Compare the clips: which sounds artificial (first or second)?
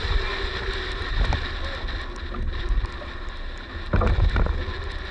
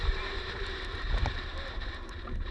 second